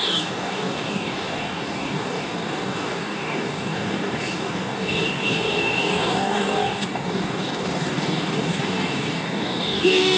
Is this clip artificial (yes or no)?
yes